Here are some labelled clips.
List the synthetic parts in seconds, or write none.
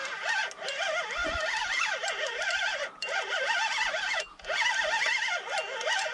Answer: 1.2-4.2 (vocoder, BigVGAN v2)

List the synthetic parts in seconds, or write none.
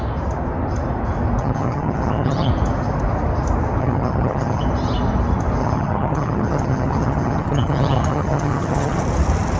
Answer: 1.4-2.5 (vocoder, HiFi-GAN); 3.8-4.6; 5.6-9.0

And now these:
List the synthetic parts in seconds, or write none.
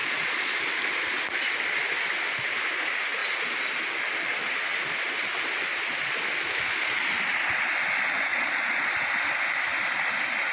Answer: 0.0-0.6 (vocoder, Vocos); 8.3-8.9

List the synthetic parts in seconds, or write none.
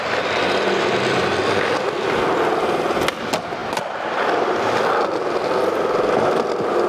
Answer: 3.6-4.9 (vocoder, BigVGAN v2)